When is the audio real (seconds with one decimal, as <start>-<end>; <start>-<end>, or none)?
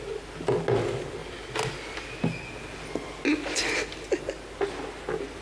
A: 0.0-5.4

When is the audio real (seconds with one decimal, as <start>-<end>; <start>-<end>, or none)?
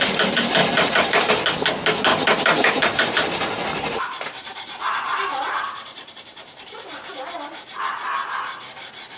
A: 0.0-0.6; 1.3-2.1; 7.1-9.2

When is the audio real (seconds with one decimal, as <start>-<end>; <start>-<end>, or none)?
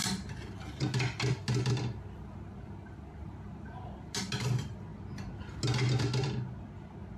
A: 0.0-7.2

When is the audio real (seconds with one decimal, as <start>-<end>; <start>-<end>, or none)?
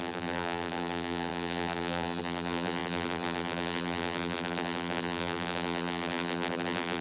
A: none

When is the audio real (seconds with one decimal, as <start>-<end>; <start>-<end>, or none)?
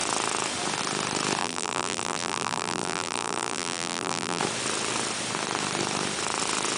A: 0.0-1.4; 4.4-6.8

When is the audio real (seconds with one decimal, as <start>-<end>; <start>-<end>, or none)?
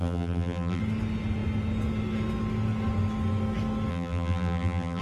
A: 0.8-3.9